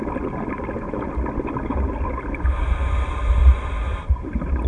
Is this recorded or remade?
recorded